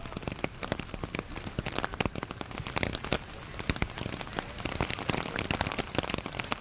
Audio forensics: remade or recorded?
recorded